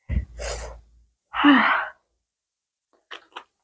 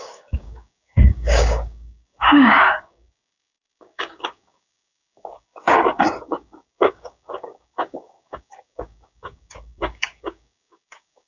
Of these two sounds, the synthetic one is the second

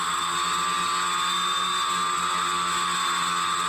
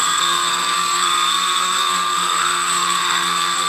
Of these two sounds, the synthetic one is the second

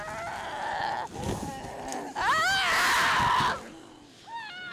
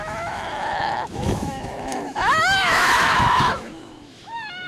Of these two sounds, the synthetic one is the second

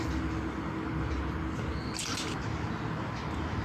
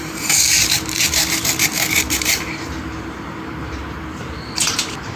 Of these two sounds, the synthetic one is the second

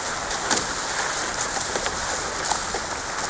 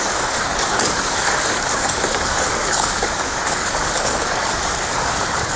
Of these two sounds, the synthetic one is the second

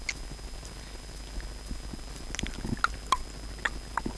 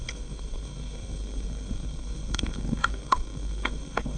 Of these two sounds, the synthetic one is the second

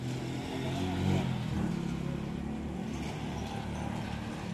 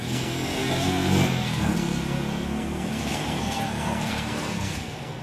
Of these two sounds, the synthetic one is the second